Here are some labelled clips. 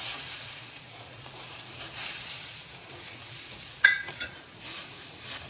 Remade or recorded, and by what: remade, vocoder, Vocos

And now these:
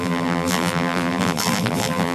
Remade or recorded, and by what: remade, vocoder, BigVGAN v2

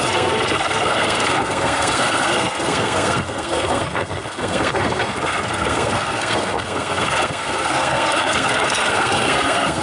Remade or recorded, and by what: remade, codec, SNAC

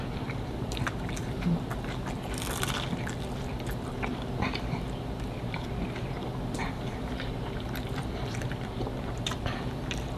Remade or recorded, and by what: remade, vocoder, BigVGAN v2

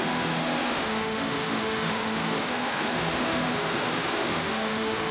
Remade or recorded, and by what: remade, autoencoder, DAC-VAE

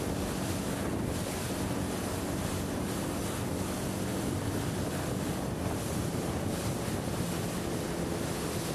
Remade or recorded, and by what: recorded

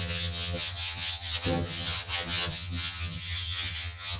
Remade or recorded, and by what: remade, vocoder, HiFi-GAN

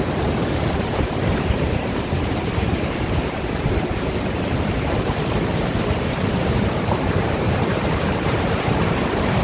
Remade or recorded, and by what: remade, vocoder, BigVGAN v2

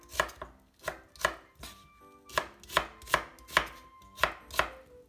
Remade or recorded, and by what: recorded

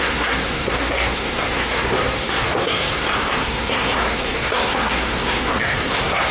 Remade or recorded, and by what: remade, codec, SNAC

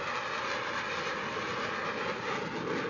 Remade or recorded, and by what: recorded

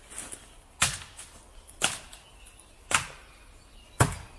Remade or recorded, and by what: recorded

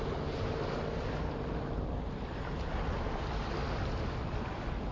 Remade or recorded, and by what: recorded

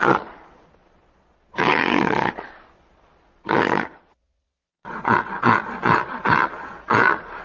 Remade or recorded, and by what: remade, vocoder, Vocos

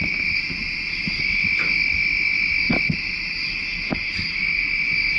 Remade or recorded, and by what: recorded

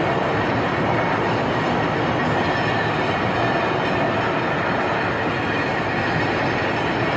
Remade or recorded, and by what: recorded